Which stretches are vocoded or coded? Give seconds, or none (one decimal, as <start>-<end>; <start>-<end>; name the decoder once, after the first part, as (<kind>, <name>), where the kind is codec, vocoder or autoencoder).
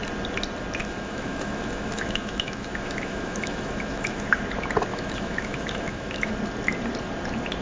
0.8-4.4 (autoencoder, DAC-VAE); 4.9-6.3